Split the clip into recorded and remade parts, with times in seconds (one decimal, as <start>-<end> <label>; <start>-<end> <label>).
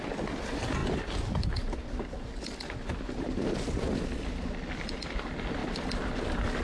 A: 0.0-6.6 recorded